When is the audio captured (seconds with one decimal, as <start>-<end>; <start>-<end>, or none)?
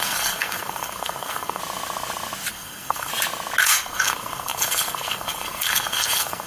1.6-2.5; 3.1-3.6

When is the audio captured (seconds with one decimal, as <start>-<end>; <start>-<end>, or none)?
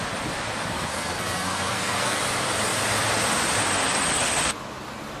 0.0-0.7; 2.2-5.2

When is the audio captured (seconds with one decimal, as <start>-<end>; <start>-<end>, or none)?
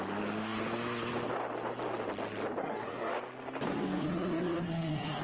0.0-2.6; 3.1-4.0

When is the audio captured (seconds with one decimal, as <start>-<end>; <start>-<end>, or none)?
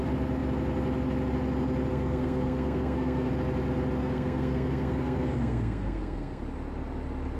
0.0-1.9; 3.3-4.0; 6.4-7.4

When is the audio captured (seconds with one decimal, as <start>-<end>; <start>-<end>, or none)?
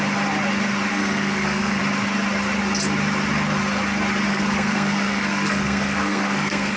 0.0-0.9; 1.8-4.3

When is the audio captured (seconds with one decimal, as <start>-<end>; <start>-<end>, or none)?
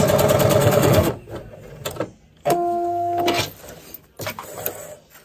0.0-0.6; 1.1-2.4; 3.2-5.2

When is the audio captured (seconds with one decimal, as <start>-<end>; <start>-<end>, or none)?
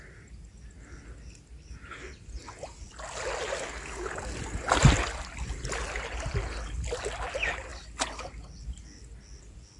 0.0-9.8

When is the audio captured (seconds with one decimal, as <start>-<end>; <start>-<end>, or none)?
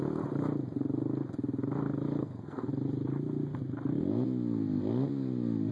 0.0-2.2; 2.7-5.7